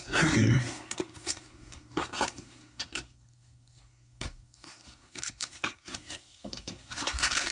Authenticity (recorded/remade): remade